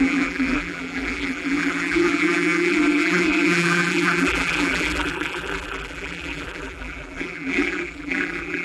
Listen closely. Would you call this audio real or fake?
fake